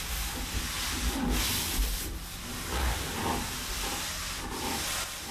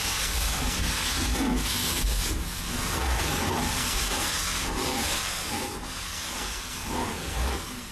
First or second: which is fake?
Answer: second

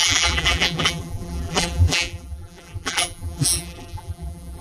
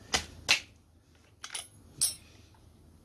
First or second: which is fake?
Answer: first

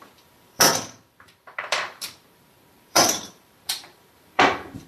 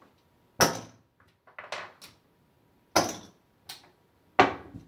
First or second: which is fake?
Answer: first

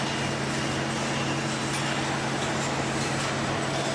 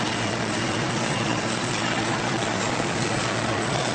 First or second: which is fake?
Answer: second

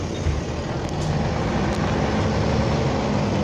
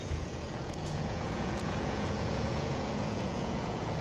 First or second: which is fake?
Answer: second